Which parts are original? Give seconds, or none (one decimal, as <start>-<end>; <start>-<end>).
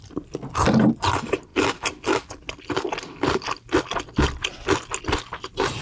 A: 0.0-5.8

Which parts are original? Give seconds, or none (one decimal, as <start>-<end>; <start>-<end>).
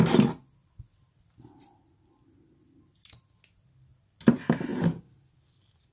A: 0.0-5.9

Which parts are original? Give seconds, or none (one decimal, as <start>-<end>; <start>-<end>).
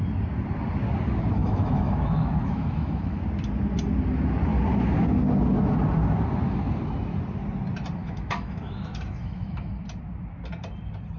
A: 0.0-1.4; 3.2-8.0; 9.7-11.2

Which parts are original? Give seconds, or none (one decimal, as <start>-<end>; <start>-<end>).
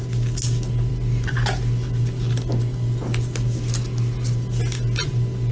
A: 0.0-5.5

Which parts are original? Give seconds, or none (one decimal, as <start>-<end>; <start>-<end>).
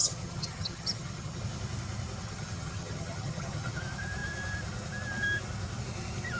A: 1.4-2.2; 3.8-6.4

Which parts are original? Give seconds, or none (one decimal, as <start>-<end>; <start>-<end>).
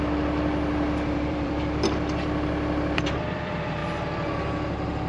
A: 3.8-5.1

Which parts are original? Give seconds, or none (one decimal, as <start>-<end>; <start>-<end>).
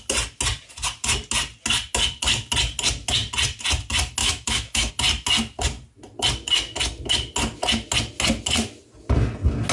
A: 0.0-4.2; 4.9-9.7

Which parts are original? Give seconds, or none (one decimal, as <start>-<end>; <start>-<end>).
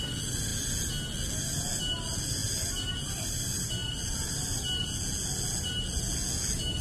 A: 0.0-6.8